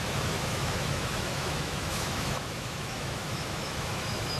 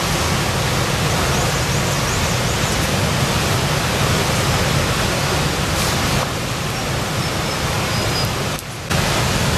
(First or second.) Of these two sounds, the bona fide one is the second